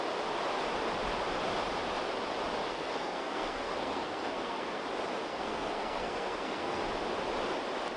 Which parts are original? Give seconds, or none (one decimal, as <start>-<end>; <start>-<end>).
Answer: 0.0-2.7; 4.8-5.3; 6.8-8.0